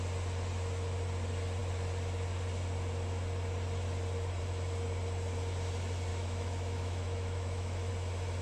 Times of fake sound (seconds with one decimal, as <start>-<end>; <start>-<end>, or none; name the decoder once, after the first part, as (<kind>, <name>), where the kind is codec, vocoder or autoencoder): 6.1-7.9 (autoencoder, DAC-VAE)

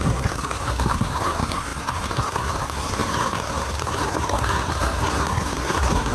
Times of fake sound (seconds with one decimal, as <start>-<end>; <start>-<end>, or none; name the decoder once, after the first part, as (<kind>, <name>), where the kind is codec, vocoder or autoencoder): 0.0-6.1 (codec, SNAC)

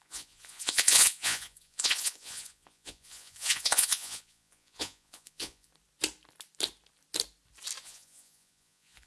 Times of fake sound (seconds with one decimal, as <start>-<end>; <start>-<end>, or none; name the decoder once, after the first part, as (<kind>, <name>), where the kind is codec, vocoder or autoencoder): 0.0-5.7 (vocoder, Vocos); 7.8-9.1

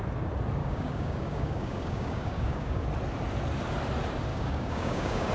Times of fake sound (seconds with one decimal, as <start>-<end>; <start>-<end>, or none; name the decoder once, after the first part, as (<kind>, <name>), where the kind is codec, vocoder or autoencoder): 0.6-2.8 (codec, DAC); 4.3-5.3

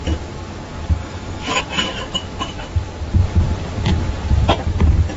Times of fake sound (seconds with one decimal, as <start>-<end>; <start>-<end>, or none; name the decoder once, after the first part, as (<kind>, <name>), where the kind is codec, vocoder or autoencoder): 1.0-1.6 (autoencoder, DAC-VAE)

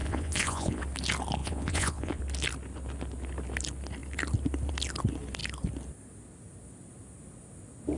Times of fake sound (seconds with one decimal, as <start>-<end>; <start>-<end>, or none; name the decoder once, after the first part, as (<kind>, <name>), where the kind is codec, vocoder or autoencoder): 0.0-0.8 (vocoder, Vocos); 1.4-2.2